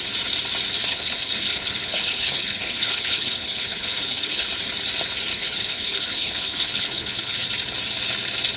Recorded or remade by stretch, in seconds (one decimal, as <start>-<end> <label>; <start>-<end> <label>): 0.0-0.8 recorded; 0.8-4.5 remade; 4.5-5.3 recorded; 5.3-7.5 remade; 7.5-8.6 recorded